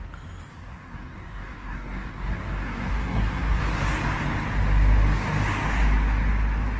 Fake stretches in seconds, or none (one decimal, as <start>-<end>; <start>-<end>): 0.5-3.6